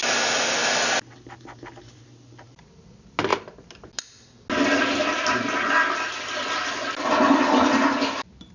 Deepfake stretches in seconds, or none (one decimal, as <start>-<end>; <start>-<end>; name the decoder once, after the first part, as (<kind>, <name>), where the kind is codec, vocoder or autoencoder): none